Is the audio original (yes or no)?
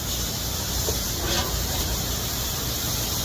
no